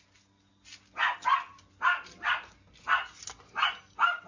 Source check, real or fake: real